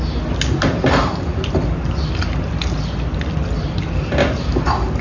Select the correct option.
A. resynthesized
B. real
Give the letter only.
B